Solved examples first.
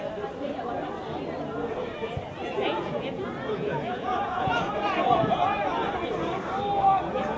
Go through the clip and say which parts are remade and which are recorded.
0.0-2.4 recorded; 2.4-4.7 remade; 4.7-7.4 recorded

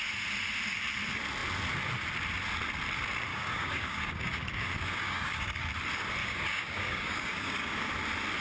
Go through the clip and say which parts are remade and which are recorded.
0.0-3.3 recorded; 3.3-5.7 remade; 5.7-6.2 recorded; 6.2-7.9 remade; 7.9-8.4 recorded

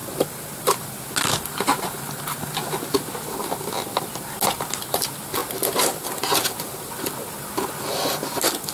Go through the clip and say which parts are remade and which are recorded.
0.0-8.7 recorded

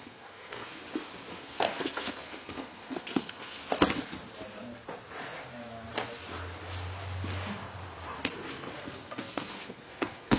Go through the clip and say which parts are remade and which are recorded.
0.0-0.8 remade; 0.8-1.3 recorded; 1.3-3.6 remade; 3.6-8.8 recorded; 8.8-10.4 remade